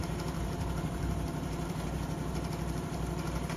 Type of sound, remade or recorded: remade